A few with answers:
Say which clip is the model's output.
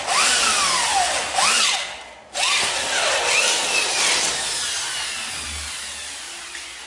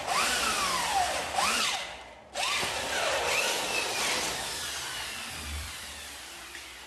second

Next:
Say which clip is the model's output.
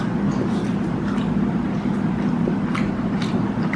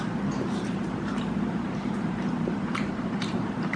second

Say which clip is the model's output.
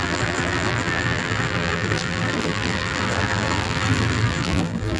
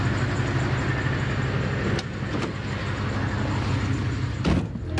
first